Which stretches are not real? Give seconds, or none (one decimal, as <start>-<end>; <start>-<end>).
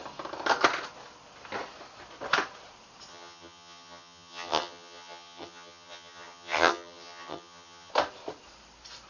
3.1-7.9